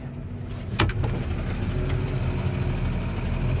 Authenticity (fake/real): real